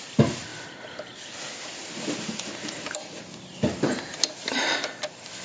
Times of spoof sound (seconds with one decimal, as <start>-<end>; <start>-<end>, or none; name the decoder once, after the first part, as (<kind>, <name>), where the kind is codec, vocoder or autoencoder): none